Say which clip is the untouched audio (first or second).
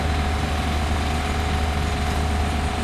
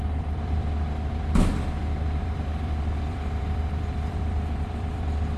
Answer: first